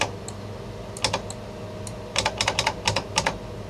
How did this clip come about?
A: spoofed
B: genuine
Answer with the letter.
B